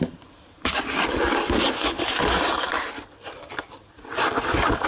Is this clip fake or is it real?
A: real